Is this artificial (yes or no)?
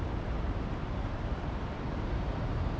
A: yes